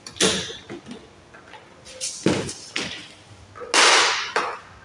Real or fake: real